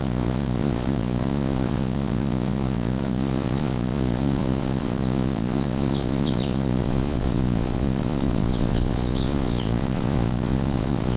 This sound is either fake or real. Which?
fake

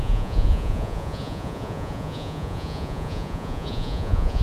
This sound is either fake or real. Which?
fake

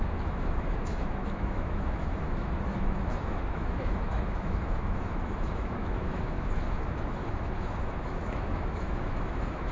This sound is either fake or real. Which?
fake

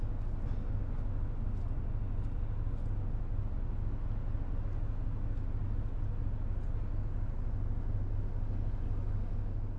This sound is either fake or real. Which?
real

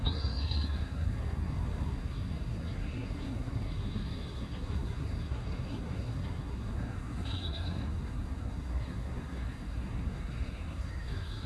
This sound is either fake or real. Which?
fake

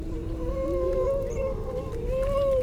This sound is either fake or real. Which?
fake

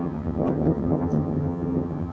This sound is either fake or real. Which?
fake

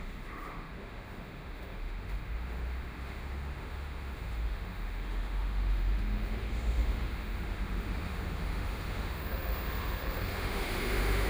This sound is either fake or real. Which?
fake